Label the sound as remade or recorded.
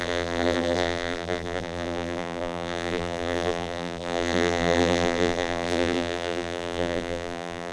remade